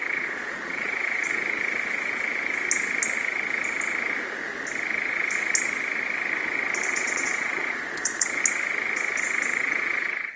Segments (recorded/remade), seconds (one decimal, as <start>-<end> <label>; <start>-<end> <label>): 0.0-1.3 remade; 1.3-6.9 recorded; 6.9-8.4 remade; 8.4-9.5 recorded; 9.5-10.4 remade